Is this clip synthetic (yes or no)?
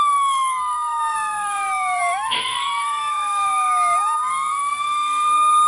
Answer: yes